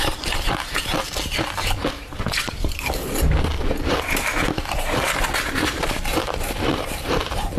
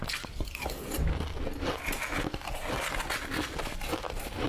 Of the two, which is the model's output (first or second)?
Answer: first